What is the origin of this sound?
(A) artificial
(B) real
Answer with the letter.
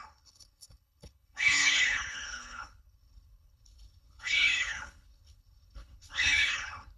A